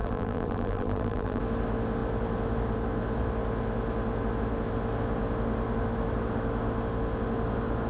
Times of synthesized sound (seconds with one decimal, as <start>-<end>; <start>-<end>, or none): 0.0-1.4